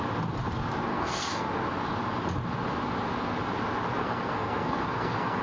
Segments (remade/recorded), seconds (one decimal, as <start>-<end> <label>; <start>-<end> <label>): 0.0-0.9 recorded; 0.9-1.5 remade; 1.5-4.0 recorded; 4.0-5.4 remade